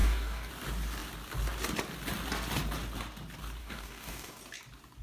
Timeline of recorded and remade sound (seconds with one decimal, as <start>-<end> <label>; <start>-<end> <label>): 0.0-0.5 remade; 0.5-3.6 recorded; 3.6-4.4 remade; 4.4-5.0 recorded